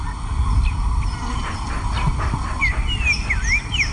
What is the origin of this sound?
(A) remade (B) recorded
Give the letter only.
B